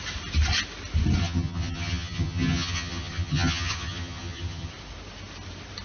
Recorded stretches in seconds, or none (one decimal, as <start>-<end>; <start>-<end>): 0.0-1.2; 4.7-5.8